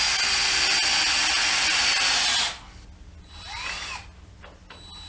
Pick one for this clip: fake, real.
real